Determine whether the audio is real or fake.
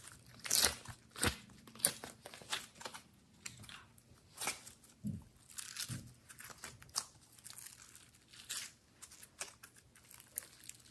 real